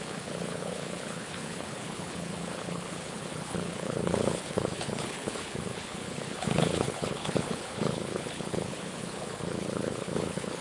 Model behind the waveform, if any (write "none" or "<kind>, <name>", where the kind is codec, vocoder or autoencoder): codec, HILCodec